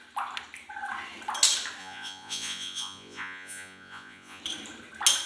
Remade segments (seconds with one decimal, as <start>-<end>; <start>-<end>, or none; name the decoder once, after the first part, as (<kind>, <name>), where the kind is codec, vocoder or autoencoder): 1.8-4.4 (vocoder, Vocos)